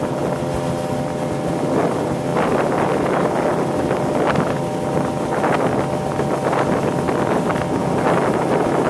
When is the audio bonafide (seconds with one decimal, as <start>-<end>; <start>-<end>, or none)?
0.0-8.9